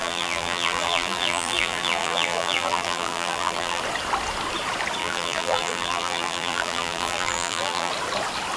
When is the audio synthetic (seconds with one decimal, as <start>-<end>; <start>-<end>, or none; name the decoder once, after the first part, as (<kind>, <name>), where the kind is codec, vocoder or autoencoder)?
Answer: 0.0-3.8 (vocoder, BigVGAN v2); 5.0-7.9